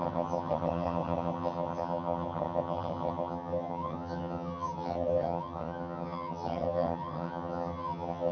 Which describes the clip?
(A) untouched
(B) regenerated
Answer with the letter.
B